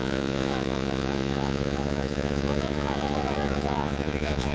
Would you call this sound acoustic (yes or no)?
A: no